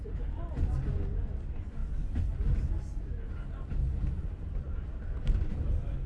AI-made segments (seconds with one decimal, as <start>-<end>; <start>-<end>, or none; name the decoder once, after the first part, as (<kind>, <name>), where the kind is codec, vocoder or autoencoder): none